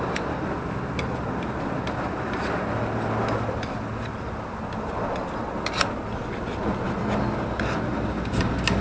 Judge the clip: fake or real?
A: real